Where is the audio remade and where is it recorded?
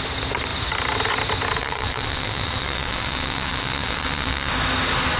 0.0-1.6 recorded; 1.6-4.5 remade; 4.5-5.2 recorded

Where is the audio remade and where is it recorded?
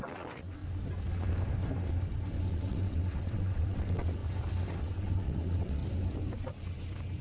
0.0-0.6 remade; 0.6-2.5 recorded; 2.5-4.2 remade; 4.2-4.8 recorded; 4.8-5.8 remade; 5.8-7.2 recorded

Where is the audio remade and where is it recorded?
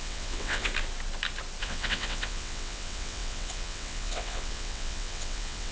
0.0-0.7 remade; 0.7-1.6 recorded; 1.6-5.7 remade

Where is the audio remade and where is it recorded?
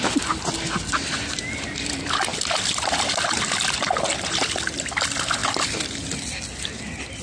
0.0-7.2 recorded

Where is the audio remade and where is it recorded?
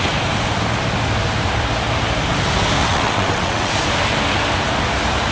0.0-2.8 recorded; 2.8-3.7 remade; 3.7-5.3 recorded